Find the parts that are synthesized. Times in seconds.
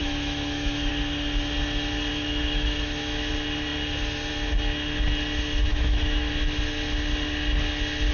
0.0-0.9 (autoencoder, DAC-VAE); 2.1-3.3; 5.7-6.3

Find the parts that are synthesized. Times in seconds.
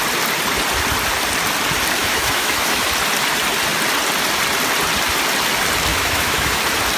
2.0-2.9 (autoencoder, DAC-VAE); 5.9-6.6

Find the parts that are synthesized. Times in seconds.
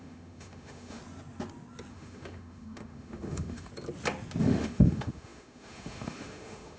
0.0-1.0 (autoencoder, DAC-VAE); 1.9-3.7; 4.4-6.8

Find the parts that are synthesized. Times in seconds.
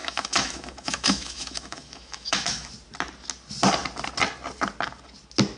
0.0-2.7 (autoencoder, DAC-VAE)